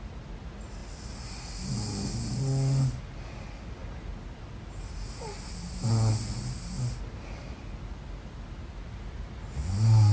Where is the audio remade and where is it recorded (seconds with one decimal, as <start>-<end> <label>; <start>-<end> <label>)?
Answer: 0.0-0.8 recorded; 0.8-1.3 remade; 1.3-10.1 recorded